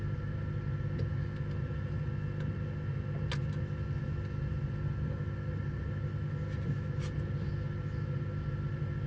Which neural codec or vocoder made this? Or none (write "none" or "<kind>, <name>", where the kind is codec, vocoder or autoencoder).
none